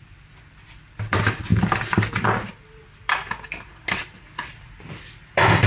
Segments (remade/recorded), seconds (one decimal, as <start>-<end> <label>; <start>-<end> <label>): 0.0-5.7 remade